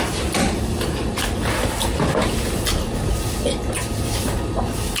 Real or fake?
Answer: real